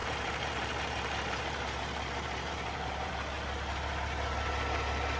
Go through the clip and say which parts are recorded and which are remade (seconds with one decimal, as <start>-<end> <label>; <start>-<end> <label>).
0.0-3.1 remade; 3.1-5.2 recorded